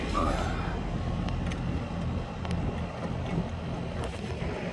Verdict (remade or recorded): recorded